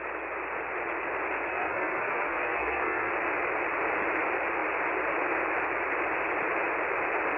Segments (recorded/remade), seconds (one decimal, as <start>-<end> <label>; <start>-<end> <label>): 0.0-1.5 recorded; 1.5-3.1 remade; 3.1-7.4 recorded